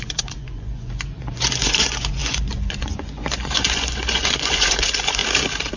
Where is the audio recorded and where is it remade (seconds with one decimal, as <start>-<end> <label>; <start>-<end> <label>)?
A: 0.0-5.2 remade; 5.2-5.8 recorded